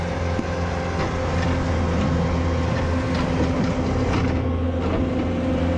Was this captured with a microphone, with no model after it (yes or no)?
yes